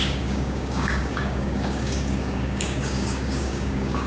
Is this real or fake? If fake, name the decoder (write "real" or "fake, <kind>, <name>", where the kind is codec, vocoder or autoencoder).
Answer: fake, codec, DAC